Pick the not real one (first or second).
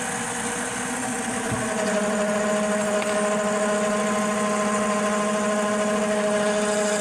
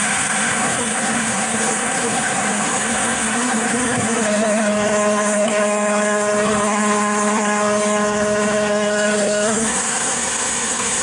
second